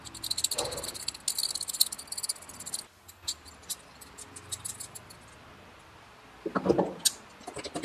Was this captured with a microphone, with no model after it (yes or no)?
yes